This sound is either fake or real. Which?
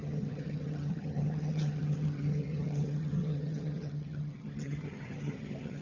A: fake